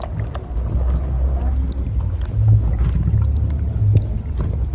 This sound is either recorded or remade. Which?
recorded